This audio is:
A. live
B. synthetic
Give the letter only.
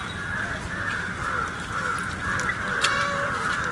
A